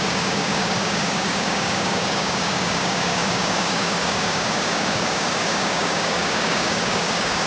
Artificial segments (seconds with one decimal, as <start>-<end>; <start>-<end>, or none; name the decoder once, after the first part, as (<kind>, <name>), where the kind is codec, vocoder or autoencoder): 0.0-7.5 (codec, DAC)